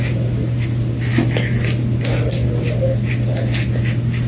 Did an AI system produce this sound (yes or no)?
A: no